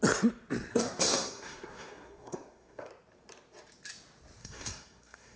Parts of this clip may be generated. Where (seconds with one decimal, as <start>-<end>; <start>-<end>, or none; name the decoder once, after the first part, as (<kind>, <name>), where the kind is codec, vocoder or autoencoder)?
0.7-2.9 (codec, SNAC); 4.4-5.4